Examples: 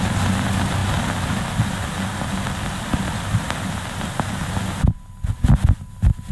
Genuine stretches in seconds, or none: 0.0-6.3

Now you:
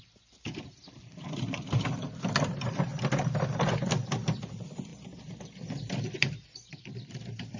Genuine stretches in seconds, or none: 2.9-4.0; 4.9-5.9

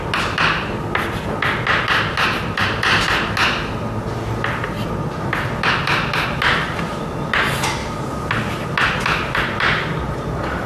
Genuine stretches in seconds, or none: 0.0-10.7